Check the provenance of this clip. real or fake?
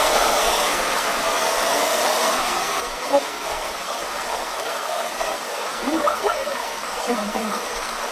fake